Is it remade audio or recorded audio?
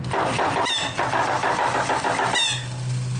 recorded